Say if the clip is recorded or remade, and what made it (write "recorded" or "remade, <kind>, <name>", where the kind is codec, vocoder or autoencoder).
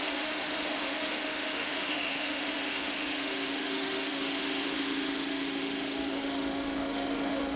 remade, autoencoder, DAC-VAE